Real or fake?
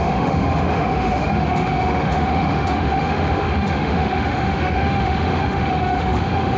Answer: fake